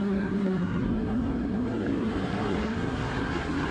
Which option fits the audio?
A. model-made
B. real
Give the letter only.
A